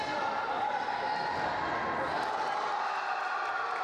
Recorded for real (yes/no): yes